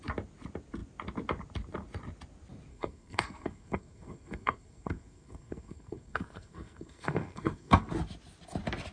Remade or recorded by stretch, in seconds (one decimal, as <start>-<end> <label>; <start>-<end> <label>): 0.0-2.7 recorded; 2.7-7.9 remade; 7.9-8.9 recorded